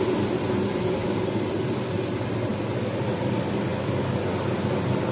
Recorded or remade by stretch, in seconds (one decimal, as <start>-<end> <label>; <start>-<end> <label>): 0.0-5.1 recorded